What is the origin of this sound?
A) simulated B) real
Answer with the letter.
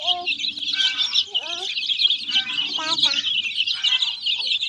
B